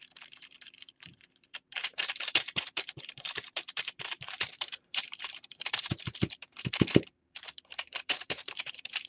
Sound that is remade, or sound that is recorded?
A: remade